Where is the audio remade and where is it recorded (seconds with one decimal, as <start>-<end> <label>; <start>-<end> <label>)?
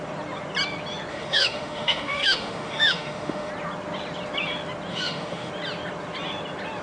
0.0-1.1 recorded; 1.1-3.5 remade; 3.5-4.9 recorded; 4.9-5.5 remade; 5.5-6.8 recorded